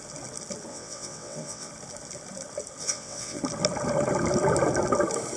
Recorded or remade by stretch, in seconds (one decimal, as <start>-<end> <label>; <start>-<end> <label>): 0.0-0.7 recorded; 0.7-1.7 remade; 1.7-2.8 recorded; 2.8-3.4 remade; 3.4-5.4 recorded